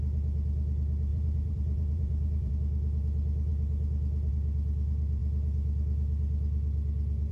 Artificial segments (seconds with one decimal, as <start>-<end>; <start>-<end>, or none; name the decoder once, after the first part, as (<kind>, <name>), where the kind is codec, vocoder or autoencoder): 1.1-2.5 (vocoder, BigVGAN v2)